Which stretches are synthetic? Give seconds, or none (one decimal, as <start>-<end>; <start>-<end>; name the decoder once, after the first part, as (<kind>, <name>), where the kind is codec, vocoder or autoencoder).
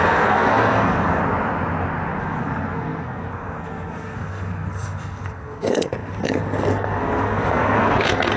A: 0.0-1.2 (codec, SNAC); 2.2-8.4